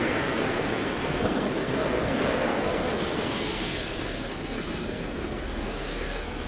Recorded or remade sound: remade